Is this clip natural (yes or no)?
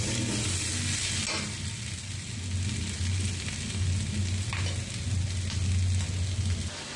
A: yes